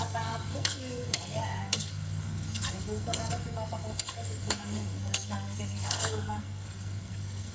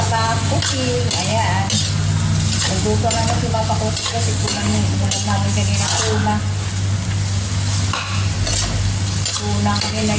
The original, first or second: second